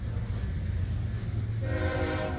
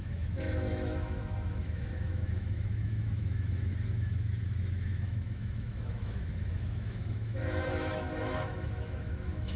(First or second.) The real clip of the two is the first